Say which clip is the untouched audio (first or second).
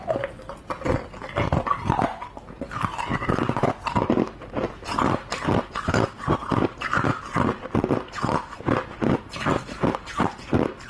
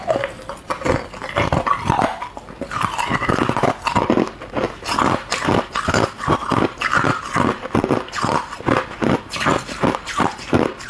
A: first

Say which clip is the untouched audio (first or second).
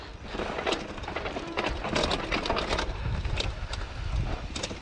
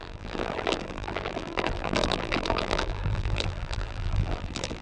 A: first